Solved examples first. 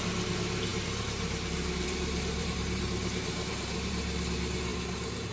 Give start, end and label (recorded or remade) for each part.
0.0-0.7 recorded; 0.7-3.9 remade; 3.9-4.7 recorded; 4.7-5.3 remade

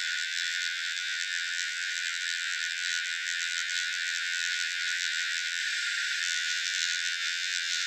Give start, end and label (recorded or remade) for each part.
0.0-5.6 remade; 5.6-6.2 recorded; 6.2-7.9 remade

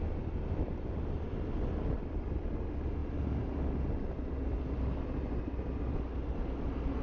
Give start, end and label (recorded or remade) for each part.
0.0-7.0 recorded

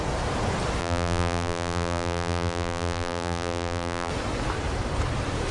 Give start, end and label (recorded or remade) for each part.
0.0-0.8 recorded; 0.8-4.1 remade; 4.1-5.5 recorded

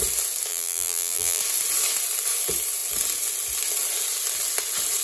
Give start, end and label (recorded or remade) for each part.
0.0-0.5 recorded; 0.5-1.4 remade; 1.4-5.0 recorded

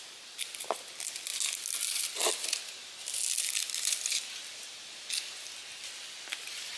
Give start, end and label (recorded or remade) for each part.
0.0-5.6 recorded; 5.6-6.3 remade; 6.3-6.8 recorded